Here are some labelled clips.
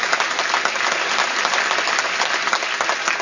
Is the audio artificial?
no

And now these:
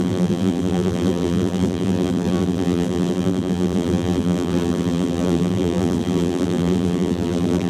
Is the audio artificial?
yes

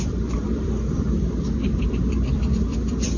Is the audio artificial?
yes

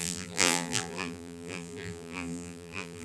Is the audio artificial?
yes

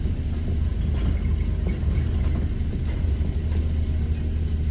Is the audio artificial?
no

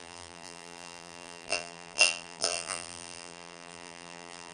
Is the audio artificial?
yes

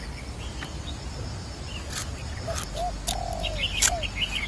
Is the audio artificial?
no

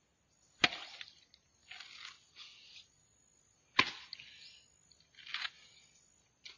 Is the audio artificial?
no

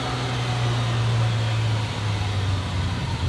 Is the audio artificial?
no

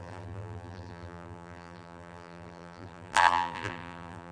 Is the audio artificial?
yes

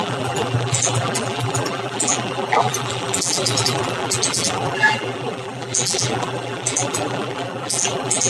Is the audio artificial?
yes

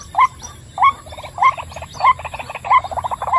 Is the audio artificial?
yes